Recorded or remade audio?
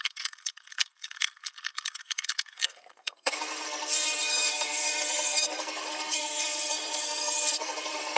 remade